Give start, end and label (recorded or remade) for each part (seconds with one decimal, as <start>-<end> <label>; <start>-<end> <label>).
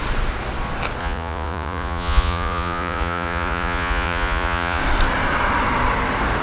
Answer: 0.0-1.0 recorded; 1.0-4.8 remade; 4.8-6.4 recorded